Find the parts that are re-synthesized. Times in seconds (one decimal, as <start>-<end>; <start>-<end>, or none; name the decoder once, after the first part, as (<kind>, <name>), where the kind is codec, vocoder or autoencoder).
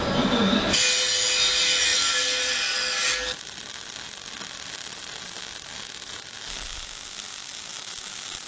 none